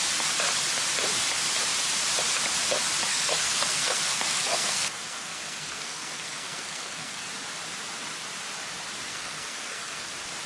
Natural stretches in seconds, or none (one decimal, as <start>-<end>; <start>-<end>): 0.0-3.1; 7.3-9.1; 10.1-10.5